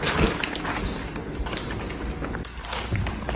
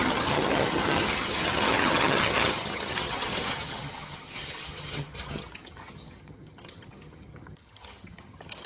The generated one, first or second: second